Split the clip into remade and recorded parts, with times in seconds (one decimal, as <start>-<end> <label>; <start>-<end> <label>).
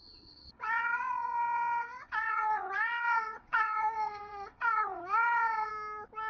0.0-5.7 remade; 5.7-6.3 recorded